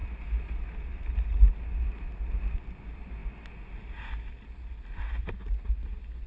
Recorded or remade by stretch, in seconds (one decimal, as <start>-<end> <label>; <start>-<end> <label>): 0.0-6.3 recorded